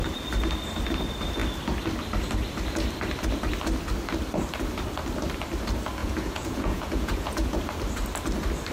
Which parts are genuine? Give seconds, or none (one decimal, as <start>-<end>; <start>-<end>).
0.0-6.0; 7.6-8.7